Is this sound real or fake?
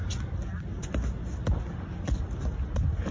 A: real